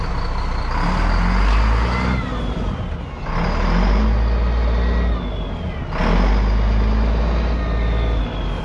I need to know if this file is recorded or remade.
recorded